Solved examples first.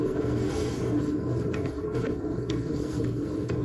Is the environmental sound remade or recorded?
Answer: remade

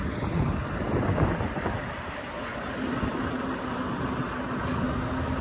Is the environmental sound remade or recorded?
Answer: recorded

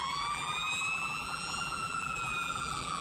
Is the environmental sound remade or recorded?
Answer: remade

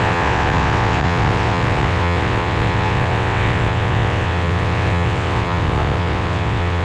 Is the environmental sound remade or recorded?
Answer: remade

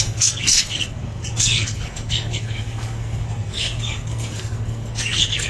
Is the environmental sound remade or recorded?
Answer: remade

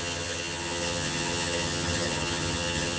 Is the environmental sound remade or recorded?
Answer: remade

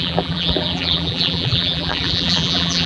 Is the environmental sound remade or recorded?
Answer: remade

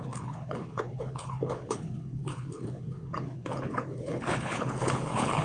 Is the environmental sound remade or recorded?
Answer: remade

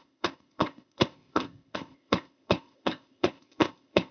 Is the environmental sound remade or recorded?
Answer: remade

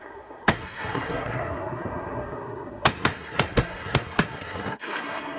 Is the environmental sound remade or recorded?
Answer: remade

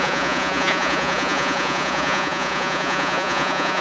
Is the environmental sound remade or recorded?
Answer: remade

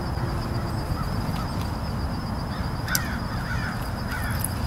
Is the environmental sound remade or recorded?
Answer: recorded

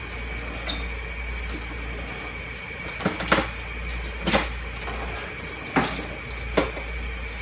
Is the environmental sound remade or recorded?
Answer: recorded